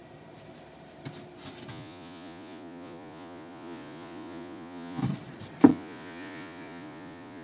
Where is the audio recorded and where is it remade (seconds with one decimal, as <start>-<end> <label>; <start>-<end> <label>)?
0.0-1.7 recorded; 1.7-5.0 remade; 5.0-5.7 recorded; 5.7-7.4 remade